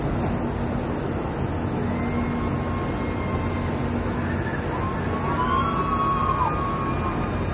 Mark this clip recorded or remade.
recorded